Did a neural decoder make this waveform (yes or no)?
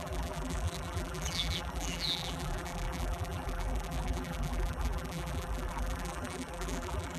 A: yes